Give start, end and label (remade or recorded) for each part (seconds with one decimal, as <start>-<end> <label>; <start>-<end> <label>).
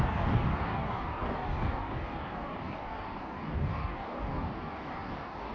0.0-5.5 remade